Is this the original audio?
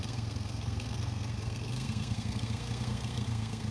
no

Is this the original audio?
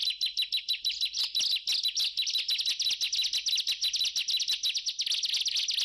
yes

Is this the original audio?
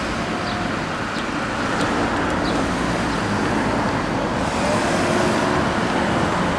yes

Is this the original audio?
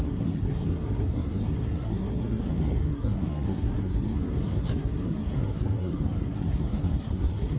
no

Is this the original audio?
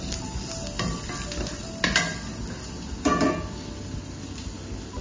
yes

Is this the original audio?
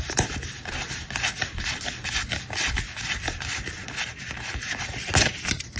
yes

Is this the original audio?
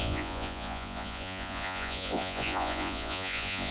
no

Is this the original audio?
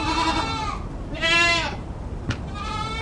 yes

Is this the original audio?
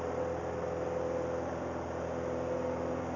yes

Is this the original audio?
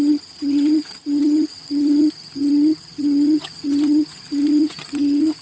no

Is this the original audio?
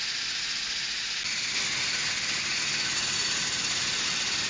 yes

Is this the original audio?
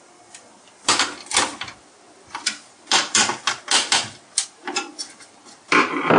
yes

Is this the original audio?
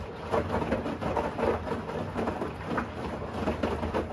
yes